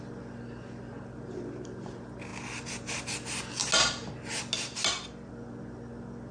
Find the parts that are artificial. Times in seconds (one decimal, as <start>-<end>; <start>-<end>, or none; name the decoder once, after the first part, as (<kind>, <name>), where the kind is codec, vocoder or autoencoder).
none